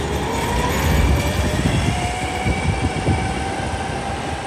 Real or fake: real